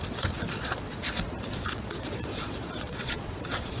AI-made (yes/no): yes